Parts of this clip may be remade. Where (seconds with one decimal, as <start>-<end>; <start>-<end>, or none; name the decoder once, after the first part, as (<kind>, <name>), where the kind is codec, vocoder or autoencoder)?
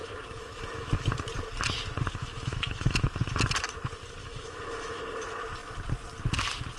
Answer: 0.0-1.1 (autoencoder, DAC-VAE); 2.2-3.1; 4.2-5.0